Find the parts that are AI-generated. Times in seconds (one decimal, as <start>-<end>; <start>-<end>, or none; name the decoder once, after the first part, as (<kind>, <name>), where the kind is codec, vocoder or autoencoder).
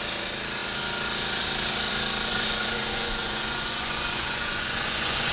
2.3-5.3 (vocoder, Vocos)